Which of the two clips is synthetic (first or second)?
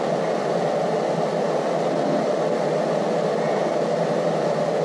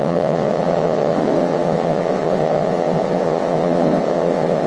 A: second